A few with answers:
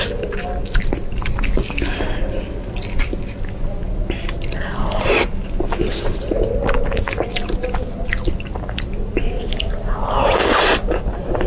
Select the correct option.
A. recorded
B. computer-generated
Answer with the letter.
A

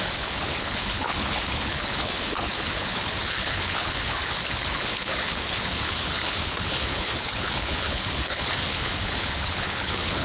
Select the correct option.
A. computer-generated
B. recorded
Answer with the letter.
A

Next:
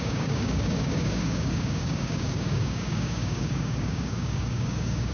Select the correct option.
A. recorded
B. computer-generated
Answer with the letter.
B